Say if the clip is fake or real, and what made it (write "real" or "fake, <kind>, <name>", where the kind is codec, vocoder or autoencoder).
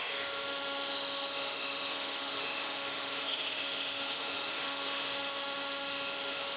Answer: fake, autoencoder, DAC-VAE